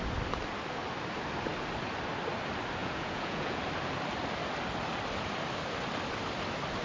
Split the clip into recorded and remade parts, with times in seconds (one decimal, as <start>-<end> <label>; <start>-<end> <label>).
0.0-2.8 recorded; 2.8-3.6 remade; 3.6-6.8 recorded